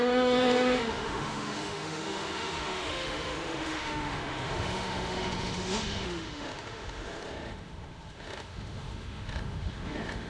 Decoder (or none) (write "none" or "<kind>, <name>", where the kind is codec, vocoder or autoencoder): autoencoder, DAC-VAE